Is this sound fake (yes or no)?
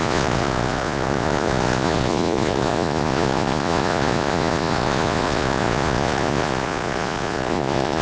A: yes